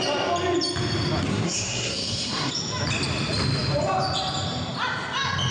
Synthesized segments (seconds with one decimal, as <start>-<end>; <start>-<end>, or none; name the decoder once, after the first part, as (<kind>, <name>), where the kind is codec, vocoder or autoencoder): 1.3-2.5 (codec, SNAC)